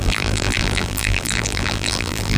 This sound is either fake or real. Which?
fake